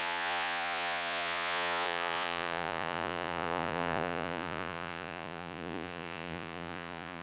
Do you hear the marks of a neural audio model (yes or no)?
yes